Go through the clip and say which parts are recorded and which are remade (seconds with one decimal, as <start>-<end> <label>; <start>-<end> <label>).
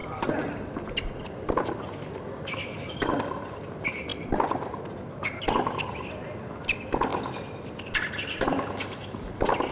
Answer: 0.0-9.7 recorded